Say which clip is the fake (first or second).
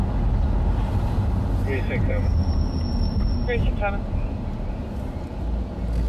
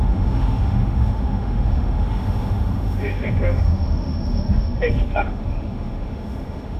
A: second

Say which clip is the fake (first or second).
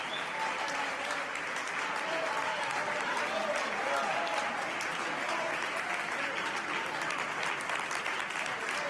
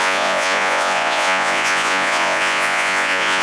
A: second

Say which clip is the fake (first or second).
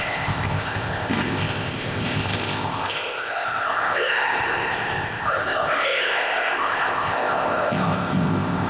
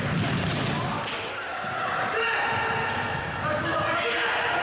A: first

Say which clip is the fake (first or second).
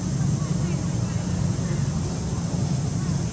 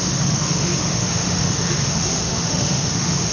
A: second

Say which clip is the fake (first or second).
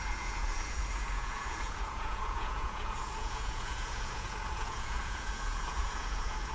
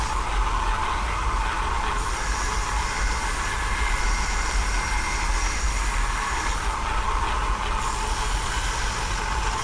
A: first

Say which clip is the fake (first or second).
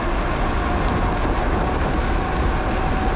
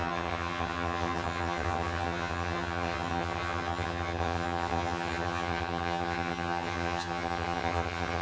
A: second